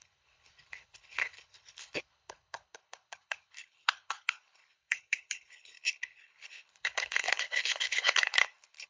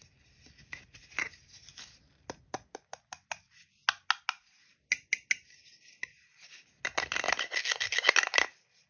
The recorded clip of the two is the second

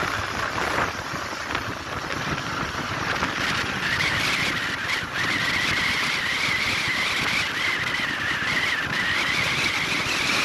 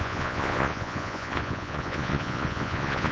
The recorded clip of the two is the first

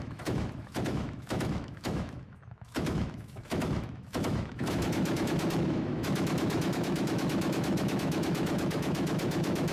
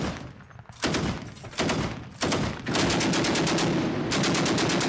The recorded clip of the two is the second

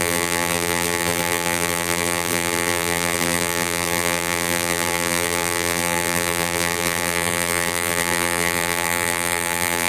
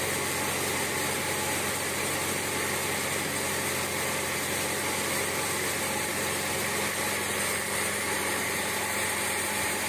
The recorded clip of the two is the second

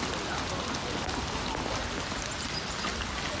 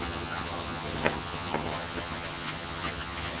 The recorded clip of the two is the first